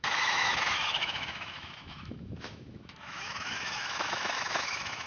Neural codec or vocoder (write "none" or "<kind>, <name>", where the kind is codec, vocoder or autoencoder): autoencoder, DAC-VAE